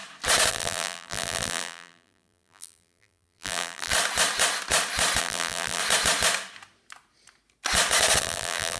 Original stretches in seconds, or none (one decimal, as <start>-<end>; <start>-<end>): 0.0-0.5; 3.9-5.2; 5.8-8.2